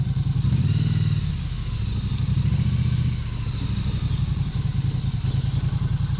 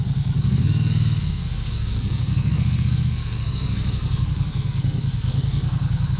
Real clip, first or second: first